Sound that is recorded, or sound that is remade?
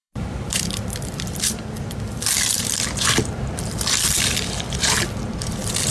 remade